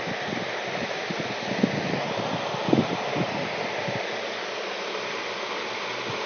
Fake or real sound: real